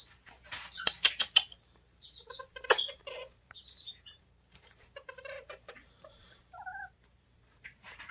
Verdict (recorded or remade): remade